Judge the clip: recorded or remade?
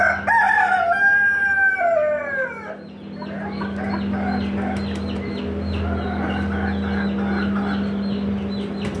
recorded